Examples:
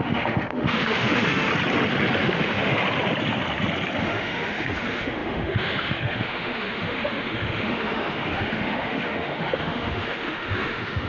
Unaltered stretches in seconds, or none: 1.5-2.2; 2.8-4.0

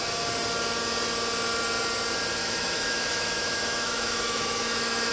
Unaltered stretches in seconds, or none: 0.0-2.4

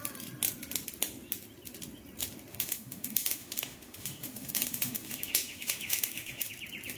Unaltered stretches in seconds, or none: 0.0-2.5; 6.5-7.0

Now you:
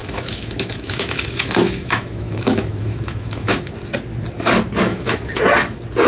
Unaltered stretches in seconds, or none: 3.7-4.9; 5.4-6.1

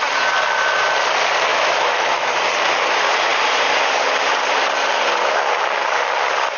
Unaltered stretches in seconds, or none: 0.0-1.5; 2.3-6.6

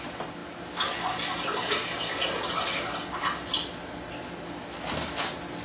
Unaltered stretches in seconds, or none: 0.0-5.6